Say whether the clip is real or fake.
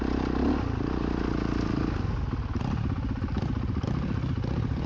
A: real